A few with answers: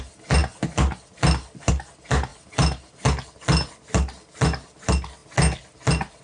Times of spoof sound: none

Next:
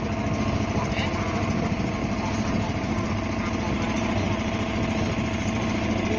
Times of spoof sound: none

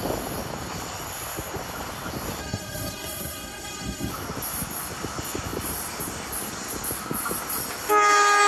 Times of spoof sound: 2.4-4.1 (codec, SNAC)

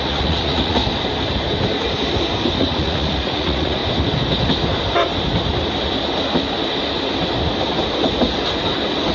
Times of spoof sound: 0.0-0.8 (vocoder, Vocos); 2.6-3.8

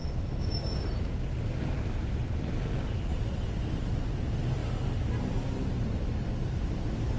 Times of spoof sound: 0.0-0.8 (autoencoder, DAC-VAE)

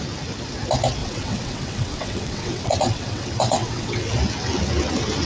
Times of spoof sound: 1.0-4.1 (vocoder, WaveNeXt)

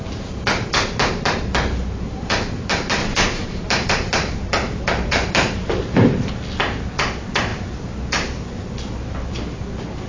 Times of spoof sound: 3.0-6.3 (vocoder, BigVGAN v2)